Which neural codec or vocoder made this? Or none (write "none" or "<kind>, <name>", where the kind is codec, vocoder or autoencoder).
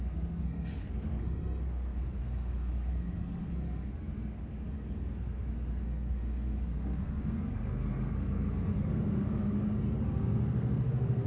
codec, SNAC